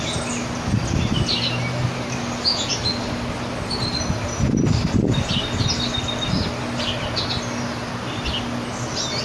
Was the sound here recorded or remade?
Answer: recorded